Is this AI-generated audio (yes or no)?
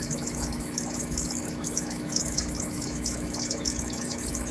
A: yes